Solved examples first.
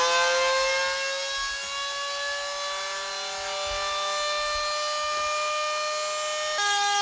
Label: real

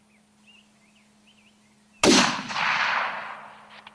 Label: real